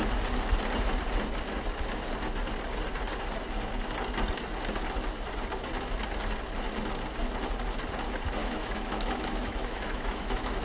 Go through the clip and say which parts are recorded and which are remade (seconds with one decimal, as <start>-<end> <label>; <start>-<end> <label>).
0.0-8.4 recorded; 8.4-10.6 remade